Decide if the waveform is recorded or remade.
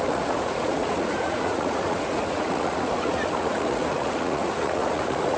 remade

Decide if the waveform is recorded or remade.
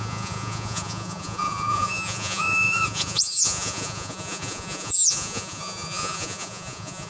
remade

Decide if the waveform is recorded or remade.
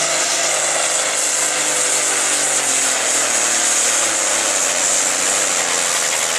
recorded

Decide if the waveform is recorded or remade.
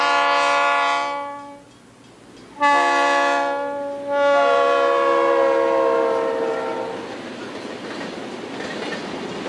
recorded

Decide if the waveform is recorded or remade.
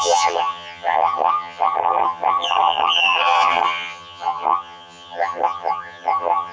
remade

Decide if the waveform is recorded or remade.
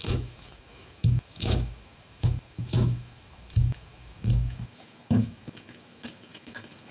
remade